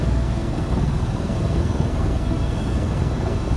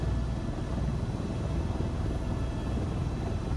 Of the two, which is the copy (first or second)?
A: first